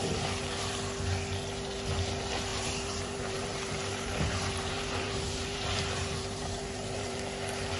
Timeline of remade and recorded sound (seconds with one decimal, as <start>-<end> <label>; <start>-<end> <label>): 0.0-2.5 recorded; 2.5-7.2 remade; 7.2-7.8 recorded